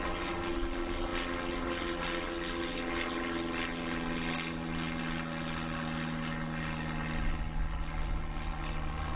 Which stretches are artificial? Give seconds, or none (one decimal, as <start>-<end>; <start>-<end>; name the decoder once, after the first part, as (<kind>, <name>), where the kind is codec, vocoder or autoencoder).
none